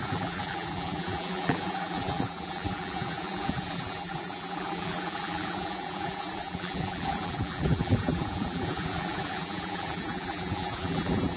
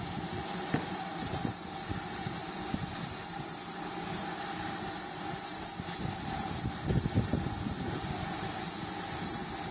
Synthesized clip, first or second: first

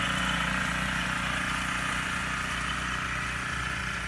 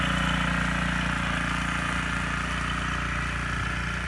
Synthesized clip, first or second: first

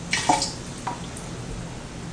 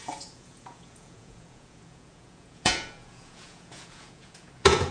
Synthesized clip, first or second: second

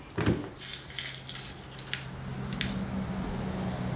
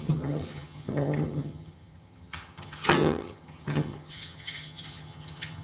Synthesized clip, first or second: second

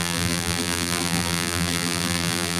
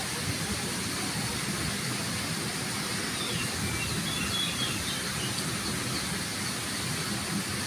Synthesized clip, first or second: first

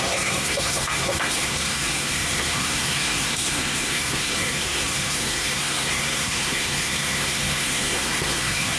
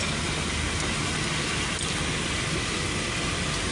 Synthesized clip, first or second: first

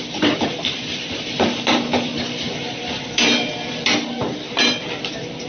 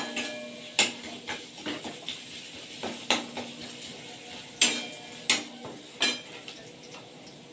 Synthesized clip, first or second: first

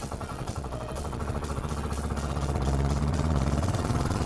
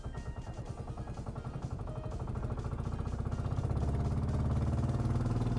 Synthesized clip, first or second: first